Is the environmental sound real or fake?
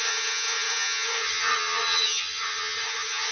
fake